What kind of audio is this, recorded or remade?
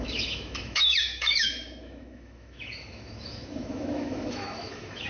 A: remade